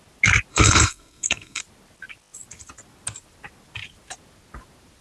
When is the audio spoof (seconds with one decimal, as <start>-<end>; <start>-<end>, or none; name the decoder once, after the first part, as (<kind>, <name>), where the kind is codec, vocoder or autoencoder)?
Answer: 0.5-1.6 (codec, SNAC)